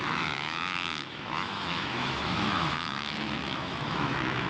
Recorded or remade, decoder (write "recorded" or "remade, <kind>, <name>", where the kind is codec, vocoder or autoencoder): remade, autoencoder, DAC-VAE